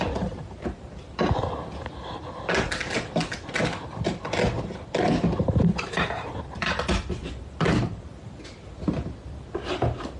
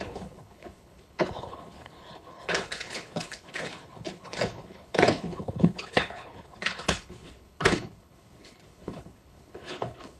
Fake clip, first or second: second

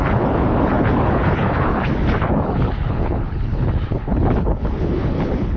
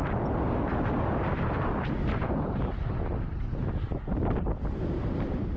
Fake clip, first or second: first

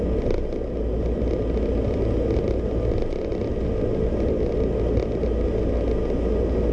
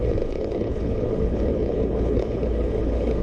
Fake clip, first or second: second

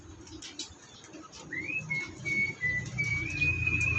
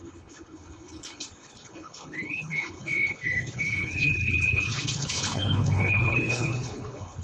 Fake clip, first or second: second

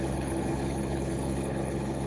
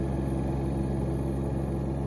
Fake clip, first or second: first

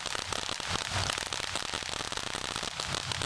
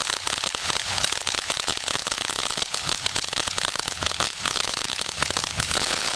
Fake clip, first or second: second